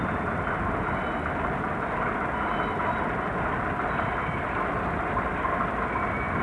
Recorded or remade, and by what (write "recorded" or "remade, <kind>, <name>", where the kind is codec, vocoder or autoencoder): recorded